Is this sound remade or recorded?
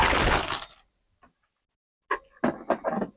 recorded